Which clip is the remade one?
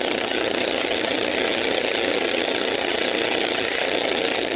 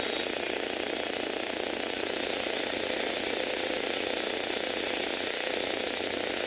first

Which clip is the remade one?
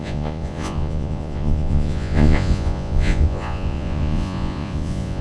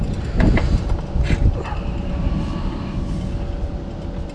first